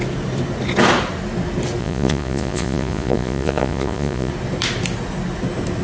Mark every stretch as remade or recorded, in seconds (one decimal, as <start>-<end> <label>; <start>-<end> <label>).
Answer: 0.0-1.8 recorded; 1.8-4.3 remade; 4.3-5.8 recorded